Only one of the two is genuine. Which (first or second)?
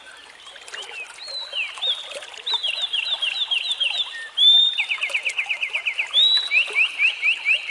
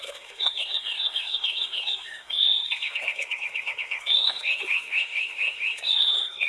first